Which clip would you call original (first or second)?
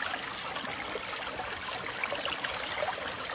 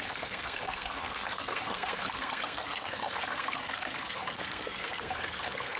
first